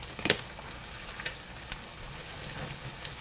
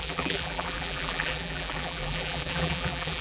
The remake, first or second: second